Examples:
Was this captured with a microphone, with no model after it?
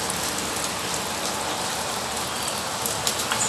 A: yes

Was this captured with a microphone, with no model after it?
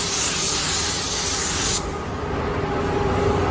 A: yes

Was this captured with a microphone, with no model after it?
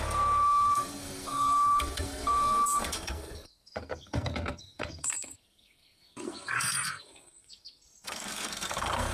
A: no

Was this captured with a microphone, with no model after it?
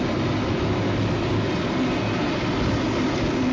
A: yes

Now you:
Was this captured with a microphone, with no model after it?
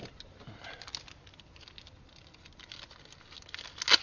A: yes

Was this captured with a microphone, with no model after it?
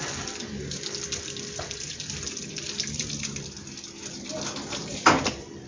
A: yes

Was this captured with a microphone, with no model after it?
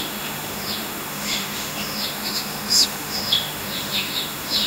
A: no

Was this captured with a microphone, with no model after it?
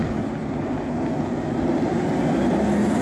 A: yes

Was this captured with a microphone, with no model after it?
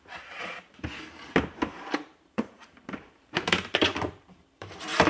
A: no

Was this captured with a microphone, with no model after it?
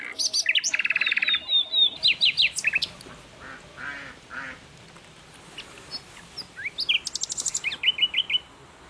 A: yes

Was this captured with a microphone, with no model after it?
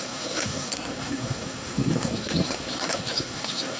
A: no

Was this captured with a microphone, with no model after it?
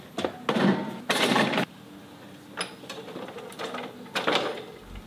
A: yes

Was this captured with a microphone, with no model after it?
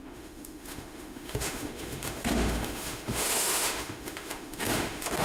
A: no